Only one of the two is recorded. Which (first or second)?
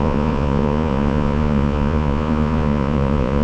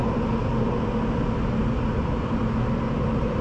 second